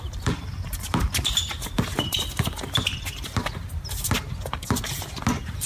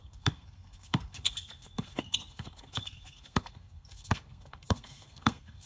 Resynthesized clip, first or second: second